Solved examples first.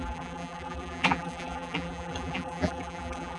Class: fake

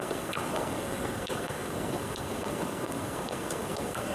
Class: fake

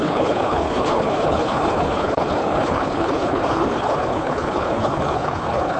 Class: fake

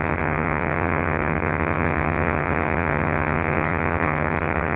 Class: fake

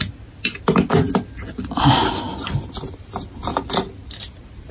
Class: real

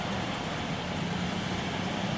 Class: real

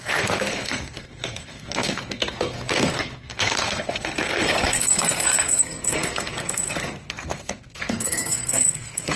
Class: fake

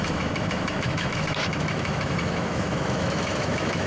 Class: fake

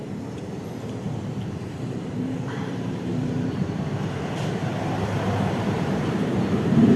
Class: fake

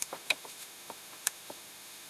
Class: fake